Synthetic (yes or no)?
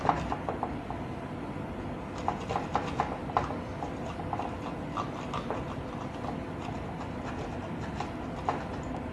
no